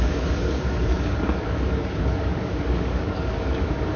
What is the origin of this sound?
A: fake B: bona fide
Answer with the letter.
A